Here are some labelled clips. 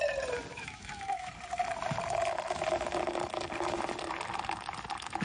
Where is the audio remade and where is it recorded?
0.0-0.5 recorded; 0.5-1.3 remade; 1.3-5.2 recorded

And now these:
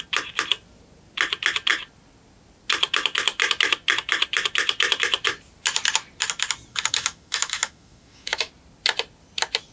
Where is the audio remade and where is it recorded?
0.0-6.7 recorded; 6.7-8.5 remade; 8.5-9.7 recorded

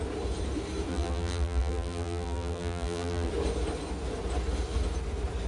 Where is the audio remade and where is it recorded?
0.0-0.9 recorded; 0.9-3.3 remade; 3.3-5.5 recorded

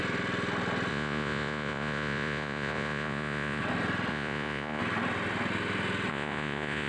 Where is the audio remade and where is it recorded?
0.0-0.9 recorded; 0.9-3.6 remade; 3.6-4.1 recorded; 4.1-4.8 remade; 4.8-6.1 recorded; 6.1-6.9 remade

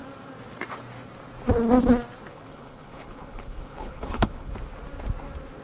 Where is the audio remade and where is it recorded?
0.0-2.3 recorded; 2.3-4.5 remade; 4.5-5.6 recorded

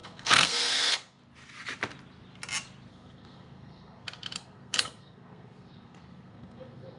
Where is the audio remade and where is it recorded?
0.0-1.2 remade; 1.2-2.9 recorded; 2.9-7.0 remade

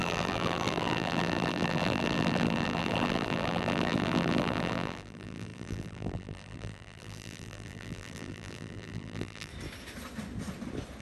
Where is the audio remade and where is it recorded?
0.0-9.5 remade; 9.5-11.0 recorded